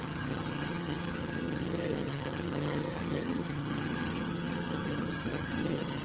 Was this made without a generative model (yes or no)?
no